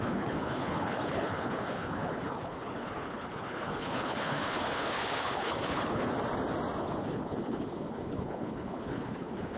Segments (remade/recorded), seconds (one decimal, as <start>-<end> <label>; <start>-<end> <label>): 0.0-6.1 remade; 6.1-6.8 recorded; 6.8-9.6 remade